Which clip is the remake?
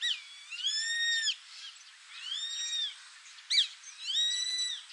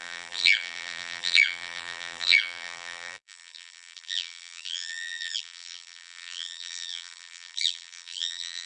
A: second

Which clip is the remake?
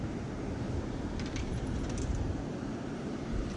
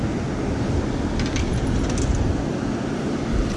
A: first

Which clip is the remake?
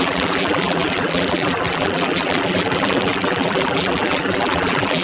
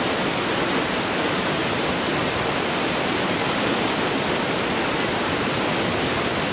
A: first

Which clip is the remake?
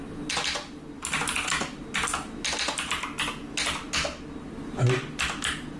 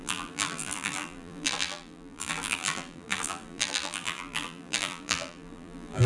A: second